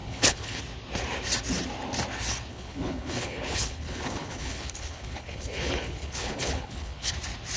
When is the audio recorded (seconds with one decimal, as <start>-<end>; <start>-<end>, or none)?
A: 0.6-2.5; 7.1-7.6